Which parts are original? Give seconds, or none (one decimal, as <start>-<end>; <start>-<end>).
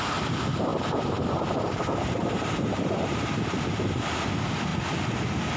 0.0-0.7; 4.1-5.6